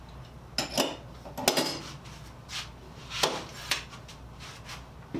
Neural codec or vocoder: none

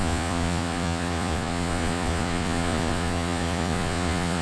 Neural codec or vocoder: vocoder, Vocos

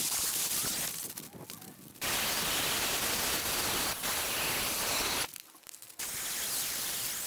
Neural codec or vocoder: none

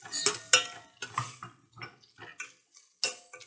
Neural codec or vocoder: none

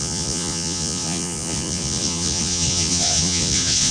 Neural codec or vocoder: vocoder, Vocos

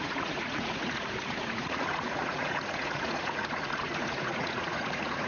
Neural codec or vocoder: vocoder, Vocos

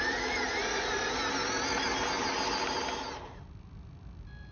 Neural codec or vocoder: none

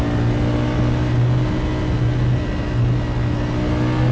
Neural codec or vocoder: none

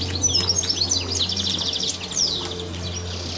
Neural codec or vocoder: none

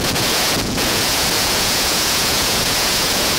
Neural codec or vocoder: vocoder, Vocos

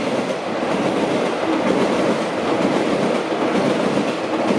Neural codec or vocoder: none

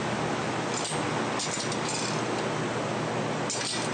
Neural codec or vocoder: none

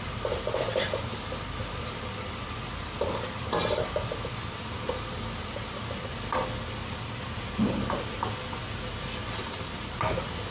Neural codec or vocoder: none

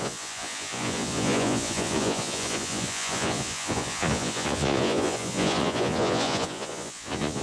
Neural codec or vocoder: vocoder, Vocos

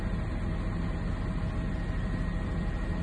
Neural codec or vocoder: none